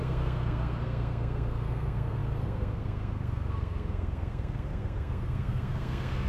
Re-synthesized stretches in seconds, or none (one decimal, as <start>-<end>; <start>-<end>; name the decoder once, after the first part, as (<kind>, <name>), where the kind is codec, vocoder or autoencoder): 0.0-6.3 (codec, SNAC)